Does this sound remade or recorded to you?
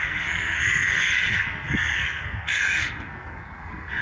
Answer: remade